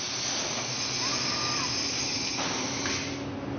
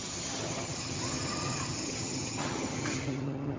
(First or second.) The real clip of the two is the first